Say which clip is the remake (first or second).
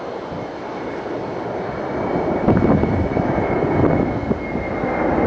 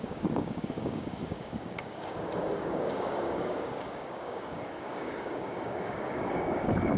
second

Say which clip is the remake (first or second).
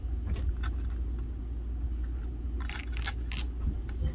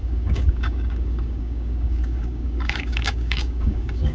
second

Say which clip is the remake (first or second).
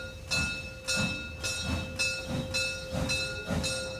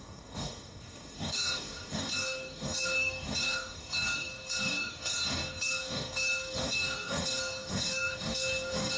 second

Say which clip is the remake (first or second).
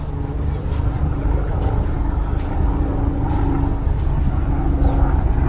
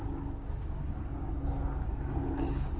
second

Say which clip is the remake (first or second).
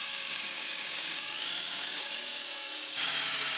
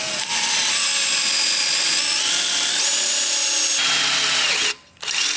first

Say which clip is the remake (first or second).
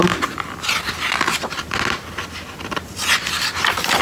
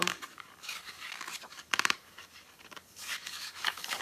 second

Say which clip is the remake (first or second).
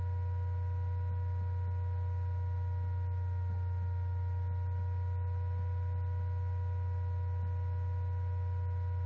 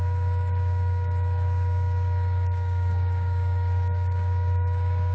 second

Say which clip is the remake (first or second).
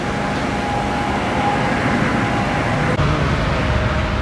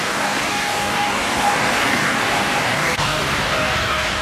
second